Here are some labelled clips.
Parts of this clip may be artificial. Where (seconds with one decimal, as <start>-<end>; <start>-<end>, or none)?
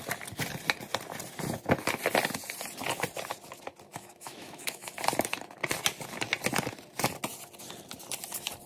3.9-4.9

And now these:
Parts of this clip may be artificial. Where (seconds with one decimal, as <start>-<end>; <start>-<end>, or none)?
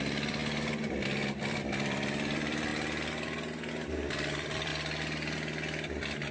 0.0-2.7; 3.7-4.7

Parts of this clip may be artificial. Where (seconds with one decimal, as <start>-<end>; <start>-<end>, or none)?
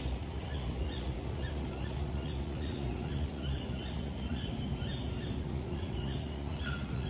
0.0-4.5; 5.4-7.1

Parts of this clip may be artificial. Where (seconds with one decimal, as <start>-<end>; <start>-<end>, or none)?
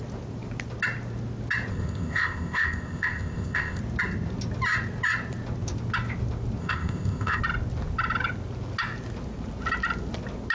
1.7-3.8; 6.6-7.4